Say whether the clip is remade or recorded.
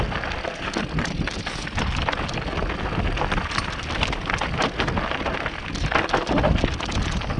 recorded